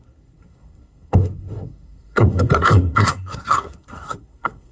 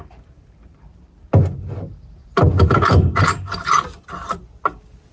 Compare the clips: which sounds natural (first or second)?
second